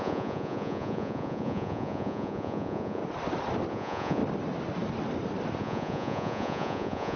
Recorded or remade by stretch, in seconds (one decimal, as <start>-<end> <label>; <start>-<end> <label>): 0.0-3.0 remade; 3.0-3.7 recorded; 3.7-4.2 remade; 4.2-5.6 recorded; 5.6-7.2 remade